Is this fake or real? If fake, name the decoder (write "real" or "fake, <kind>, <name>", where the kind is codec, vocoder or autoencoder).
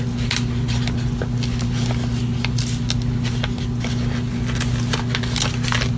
real